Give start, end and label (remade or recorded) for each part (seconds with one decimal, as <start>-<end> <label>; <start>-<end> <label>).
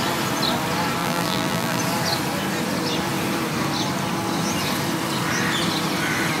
0.0-1.0 recorded; 1.0-1.8 remade; 1.8-6.4 recorded